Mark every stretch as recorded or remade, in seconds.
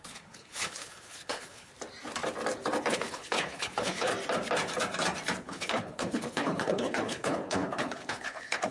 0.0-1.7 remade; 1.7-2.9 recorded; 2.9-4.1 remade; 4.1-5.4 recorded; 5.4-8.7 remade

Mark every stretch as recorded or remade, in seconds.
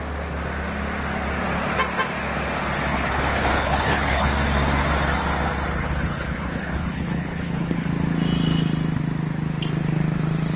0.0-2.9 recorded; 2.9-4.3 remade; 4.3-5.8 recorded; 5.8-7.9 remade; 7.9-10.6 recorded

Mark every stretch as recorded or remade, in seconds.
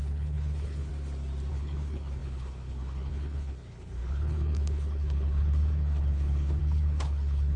0.0-0.9 remade; 0.9-1.5 recorded; 1.5-7.6 remade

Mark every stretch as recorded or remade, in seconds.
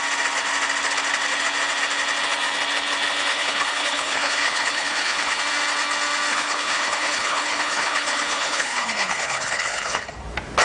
0.0-3.3 recorded; 3.3-5.4 remade; 5.4-6.3 recorded; 6.3-10.1 remade; 10.1-10.6 recorded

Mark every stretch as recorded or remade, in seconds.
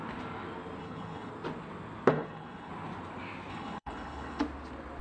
0.0-0.8 recorded; 0.8-1.3 remade; 1.3-2.1 recorded; 2.1-2.7 remade; 2.7-3.5 recorded; 3.5-4.4 remade; 4.4-5.0 recorded